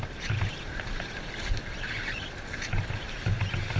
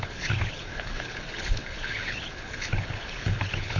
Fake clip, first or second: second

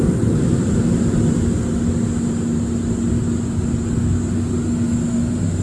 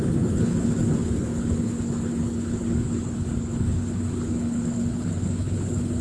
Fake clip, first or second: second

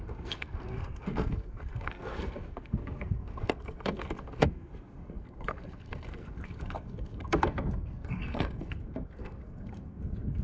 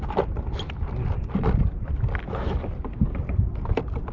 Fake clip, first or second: first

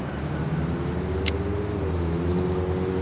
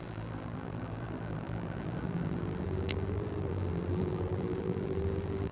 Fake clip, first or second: second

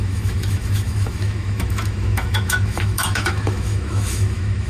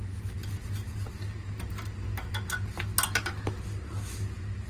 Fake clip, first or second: first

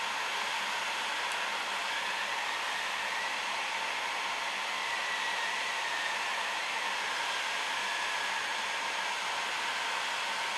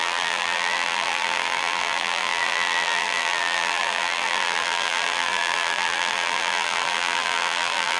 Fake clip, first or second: second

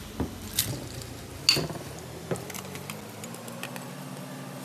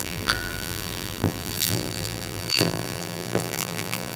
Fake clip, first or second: second